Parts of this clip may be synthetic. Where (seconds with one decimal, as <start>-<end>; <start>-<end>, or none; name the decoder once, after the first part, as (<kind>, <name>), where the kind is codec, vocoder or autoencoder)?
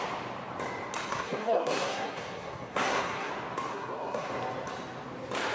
1.1-3.3 (codec, SNAC); 3.7-4.3